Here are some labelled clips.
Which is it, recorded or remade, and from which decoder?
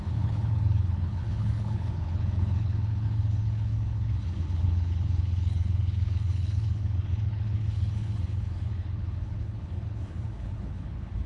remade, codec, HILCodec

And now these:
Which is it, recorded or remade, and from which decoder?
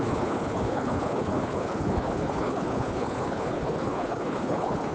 remade, codec, HILCodec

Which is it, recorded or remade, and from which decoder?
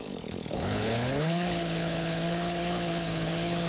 remade, codec, HILCodec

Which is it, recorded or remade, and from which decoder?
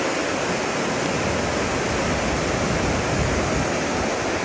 recorded